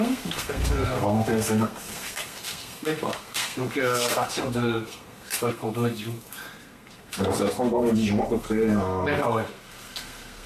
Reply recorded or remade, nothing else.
remade